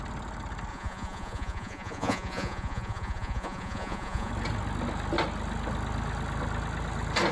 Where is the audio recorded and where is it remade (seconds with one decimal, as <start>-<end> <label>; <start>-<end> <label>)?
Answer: 0.0-0.7 recorded; 0.7-4.3 remade; 4.3-7.3 recorded